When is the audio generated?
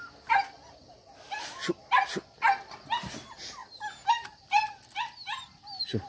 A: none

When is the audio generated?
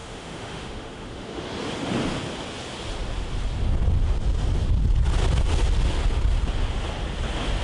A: 0.0-1.4 (autoencoder, DAC-VAE)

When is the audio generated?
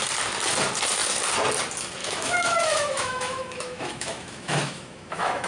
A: 2.0-5.5 (autoencoder, DAC-VAE)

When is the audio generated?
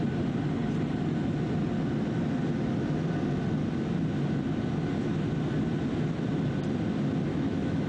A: 7.3-7.9 (autoencoder, DAC-VAE)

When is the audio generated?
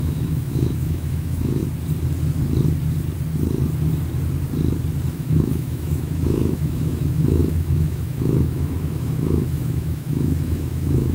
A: 0.0-1.6 (autoencoder, DAC-VAE); 5.1-11.1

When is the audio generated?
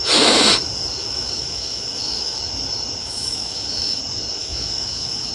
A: 1.0-2.4 (autoencoder, DAC-VAE); 3.0-4.0; 4.4-5.3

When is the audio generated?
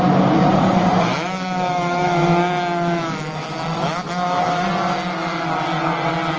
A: 1.1-4.4 (autoencoder, DAC-VAE)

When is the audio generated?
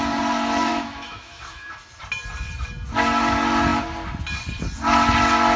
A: 0.7-1.7 (autoencoder, DAC-VAE)